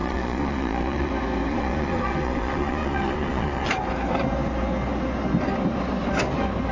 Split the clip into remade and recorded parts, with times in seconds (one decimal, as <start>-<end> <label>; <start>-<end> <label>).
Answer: 0.0-1.1 remade; 1.1-1.5 recorded; 1.5-3.7 remade; 3.7-6.7 recorded